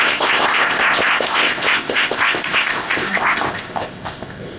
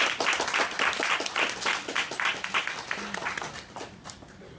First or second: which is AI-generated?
first